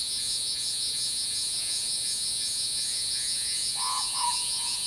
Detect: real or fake fake